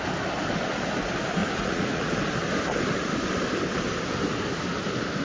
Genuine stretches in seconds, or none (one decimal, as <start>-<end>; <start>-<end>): 0.0-1.4; 2.1-5.2